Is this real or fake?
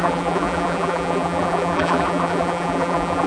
fake